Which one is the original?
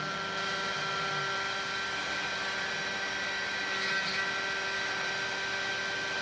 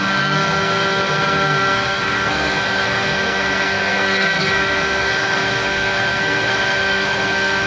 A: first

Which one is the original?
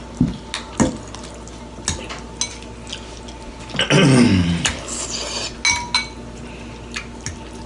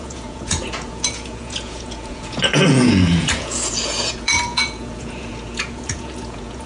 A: first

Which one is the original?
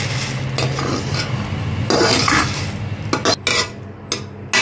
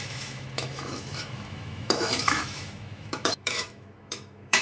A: first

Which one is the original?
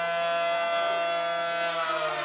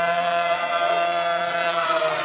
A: first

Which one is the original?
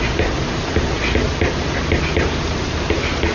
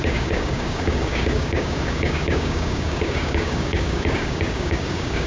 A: first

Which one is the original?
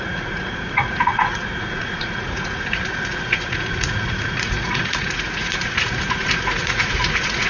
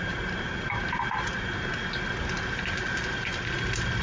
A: second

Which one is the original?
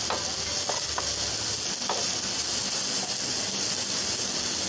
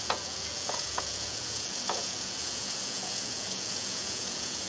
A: first